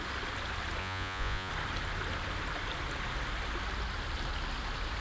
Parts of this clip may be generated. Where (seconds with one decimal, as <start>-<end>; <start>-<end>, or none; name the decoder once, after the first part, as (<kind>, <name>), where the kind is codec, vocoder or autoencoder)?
0.8-1.5 (vocoder, Vocos)